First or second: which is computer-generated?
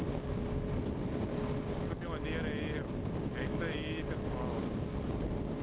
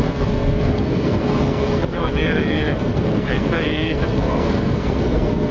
second